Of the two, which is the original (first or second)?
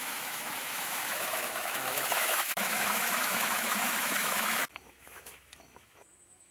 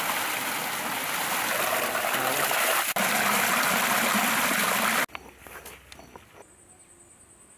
second